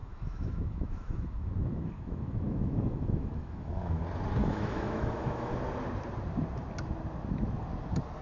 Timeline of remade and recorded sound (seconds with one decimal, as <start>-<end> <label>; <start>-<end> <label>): 0.0-4.0 remade; 4.0-4.4 recorded; 4.4-5.5 remade; 5.5-8.2 recorded